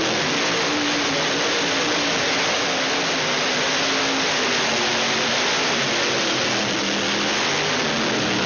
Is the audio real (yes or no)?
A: yes